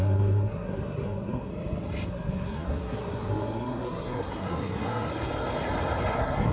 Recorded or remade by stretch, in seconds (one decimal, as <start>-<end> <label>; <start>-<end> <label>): 0.0-1.5 remade; 1.5-2.1 recorded; 2.1-5.1 remade; 5.1-6.1 recorded; 6.1-6.5 remade